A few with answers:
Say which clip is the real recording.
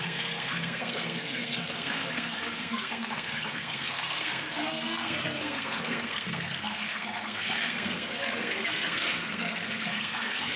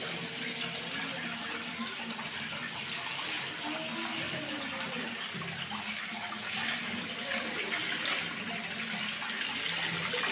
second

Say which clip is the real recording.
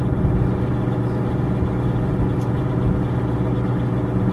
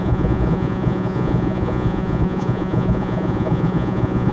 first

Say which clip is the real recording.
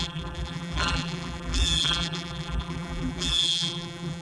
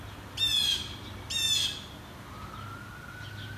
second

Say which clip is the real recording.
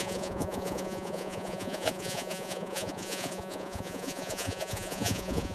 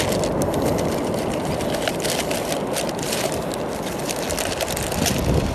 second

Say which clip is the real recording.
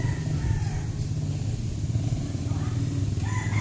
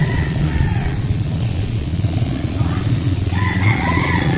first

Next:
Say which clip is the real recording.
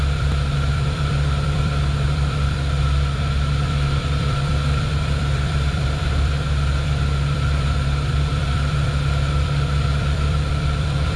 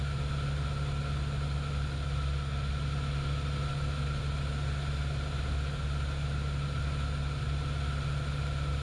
second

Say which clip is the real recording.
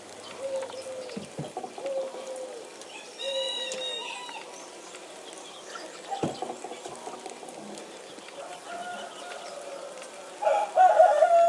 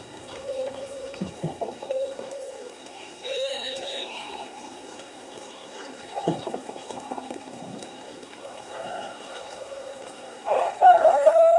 first